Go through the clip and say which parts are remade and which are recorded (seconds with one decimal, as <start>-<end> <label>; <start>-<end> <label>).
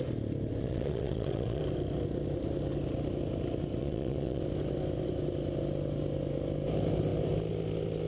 0.0-0.6 recorded; 0.6-1.6 remade; 1.6-3.8 recorded; 3.8-4.4 remade; 4.4-8.1 recorded